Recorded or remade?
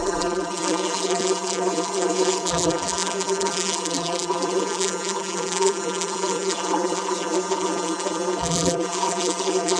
remade